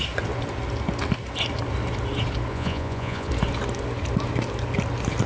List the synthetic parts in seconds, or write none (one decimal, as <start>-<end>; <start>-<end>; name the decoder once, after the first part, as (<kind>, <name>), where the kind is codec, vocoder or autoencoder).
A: 2.5-3.3 (vocoder, Vocos)